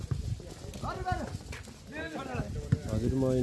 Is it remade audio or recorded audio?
recorded